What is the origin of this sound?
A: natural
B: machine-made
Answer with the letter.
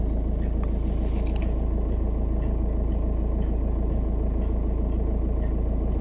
A